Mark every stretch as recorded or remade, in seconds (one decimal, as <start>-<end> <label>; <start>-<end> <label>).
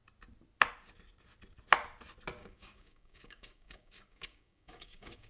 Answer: 0.0-2.4 recorded; 2.4-5.3 remade